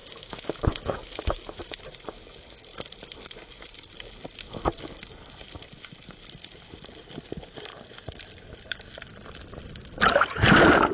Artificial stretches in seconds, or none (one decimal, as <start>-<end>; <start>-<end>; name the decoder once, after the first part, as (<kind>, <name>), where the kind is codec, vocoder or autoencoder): 0.0-1.8 (autoencoder, DAC-VAE)

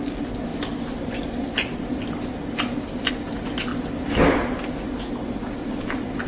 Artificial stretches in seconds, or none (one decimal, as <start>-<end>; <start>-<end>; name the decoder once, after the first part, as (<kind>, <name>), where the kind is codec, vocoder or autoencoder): none

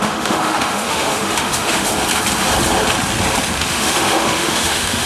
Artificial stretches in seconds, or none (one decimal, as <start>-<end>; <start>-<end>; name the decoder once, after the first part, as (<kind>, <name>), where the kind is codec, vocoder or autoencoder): 0.0-1.9 (autoencoder, DAC-VAE); 3.7-5.1

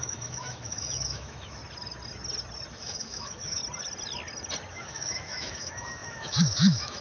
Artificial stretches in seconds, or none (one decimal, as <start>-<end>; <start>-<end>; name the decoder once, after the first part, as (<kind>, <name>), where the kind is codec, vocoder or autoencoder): 0.0-1.6 (autoencoder, DAC-VAE); 2.7-3.6; 4.7-7.0